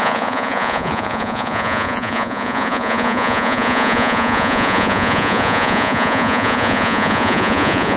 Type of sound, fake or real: fake